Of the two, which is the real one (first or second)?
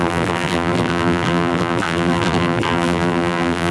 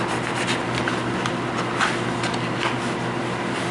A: second